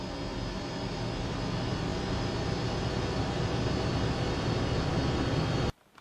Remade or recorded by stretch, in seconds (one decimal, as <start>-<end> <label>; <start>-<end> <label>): 0.0-6.0 recorded